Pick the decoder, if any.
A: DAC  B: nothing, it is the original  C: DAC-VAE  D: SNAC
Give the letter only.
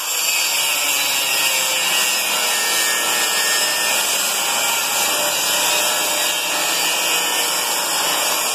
B